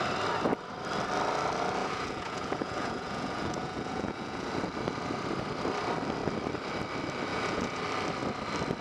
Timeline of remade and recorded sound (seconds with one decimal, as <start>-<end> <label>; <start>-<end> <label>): 0.0-1.8 recorded; 1.8-4.5 remade; 4.5-7.3 recorded; 7.3-7.8 remade; 7.8-8.8 recorded